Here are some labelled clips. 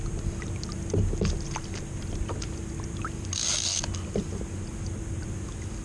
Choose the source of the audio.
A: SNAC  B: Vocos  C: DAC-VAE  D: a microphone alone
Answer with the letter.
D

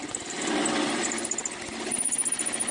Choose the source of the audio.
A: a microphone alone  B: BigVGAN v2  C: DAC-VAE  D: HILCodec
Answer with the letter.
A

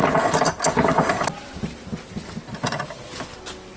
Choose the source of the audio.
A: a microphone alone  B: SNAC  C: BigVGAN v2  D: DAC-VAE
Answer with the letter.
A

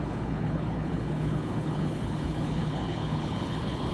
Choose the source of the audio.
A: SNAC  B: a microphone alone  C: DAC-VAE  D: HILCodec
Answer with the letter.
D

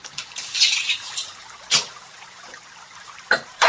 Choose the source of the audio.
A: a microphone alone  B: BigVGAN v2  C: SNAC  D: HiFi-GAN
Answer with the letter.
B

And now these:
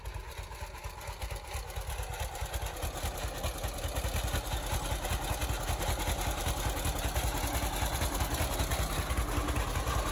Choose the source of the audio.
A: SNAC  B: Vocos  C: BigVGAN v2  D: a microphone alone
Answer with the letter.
D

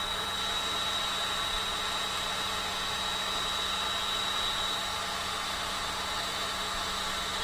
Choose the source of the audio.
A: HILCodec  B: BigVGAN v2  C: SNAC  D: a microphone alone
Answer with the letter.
D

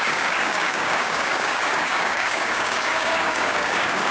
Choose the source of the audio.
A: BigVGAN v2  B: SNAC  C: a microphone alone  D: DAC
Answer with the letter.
D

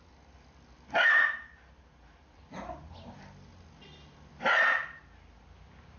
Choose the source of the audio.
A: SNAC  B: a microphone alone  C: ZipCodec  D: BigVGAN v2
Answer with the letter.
B